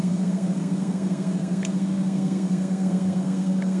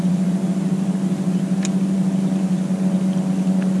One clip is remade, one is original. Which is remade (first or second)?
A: first